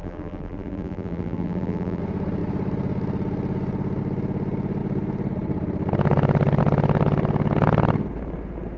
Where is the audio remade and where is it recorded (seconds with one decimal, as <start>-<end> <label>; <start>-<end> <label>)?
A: 0.0-2.0 remade; 2.0-8.8 recorded